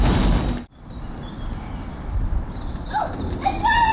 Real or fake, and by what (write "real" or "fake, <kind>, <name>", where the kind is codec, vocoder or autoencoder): real